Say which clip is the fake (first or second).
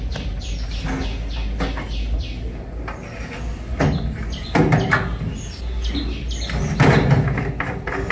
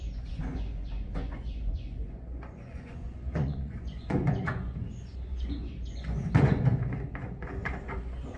second